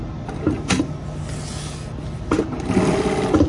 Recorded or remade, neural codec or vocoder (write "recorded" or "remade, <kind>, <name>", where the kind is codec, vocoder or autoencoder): recorded